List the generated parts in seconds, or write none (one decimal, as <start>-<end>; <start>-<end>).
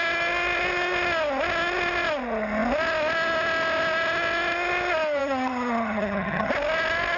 5.2-6.5